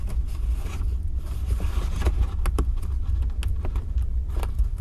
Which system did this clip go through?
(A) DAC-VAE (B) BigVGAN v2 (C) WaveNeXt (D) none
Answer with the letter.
D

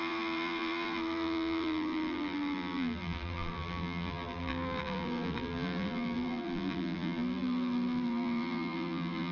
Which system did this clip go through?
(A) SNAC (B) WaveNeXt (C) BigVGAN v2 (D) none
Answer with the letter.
C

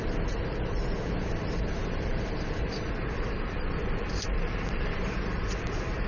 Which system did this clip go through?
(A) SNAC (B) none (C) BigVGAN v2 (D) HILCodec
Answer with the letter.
C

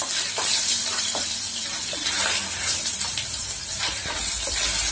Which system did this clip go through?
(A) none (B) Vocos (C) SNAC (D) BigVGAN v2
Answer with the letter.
D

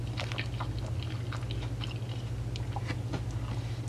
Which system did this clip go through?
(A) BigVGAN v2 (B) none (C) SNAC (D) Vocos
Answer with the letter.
B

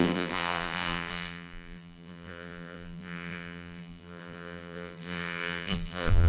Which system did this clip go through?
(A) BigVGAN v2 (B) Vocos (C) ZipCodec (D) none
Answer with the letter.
A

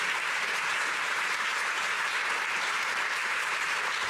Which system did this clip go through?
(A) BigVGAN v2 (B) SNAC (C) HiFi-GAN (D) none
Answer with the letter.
A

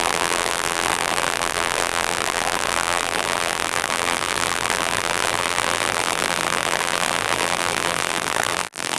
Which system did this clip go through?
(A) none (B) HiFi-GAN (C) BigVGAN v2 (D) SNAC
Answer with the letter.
C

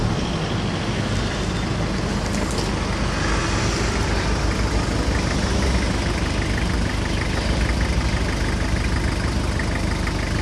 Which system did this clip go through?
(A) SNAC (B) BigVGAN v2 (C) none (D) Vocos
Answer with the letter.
C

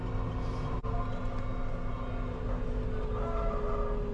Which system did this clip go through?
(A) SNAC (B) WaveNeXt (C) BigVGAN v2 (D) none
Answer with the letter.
D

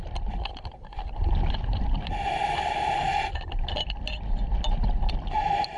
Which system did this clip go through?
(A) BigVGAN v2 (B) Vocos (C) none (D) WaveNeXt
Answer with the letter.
A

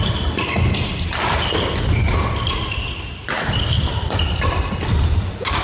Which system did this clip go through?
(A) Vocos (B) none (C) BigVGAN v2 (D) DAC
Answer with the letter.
B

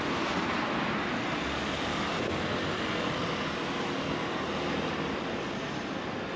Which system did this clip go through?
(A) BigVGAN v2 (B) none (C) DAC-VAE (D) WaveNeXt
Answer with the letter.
B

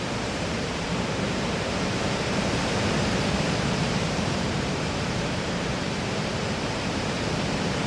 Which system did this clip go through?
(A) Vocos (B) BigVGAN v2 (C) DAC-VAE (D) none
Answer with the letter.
B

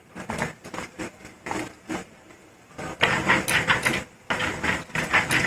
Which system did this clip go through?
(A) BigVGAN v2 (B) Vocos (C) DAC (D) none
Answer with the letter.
D